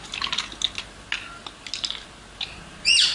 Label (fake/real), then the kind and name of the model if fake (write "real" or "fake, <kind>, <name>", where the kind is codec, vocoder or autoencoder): real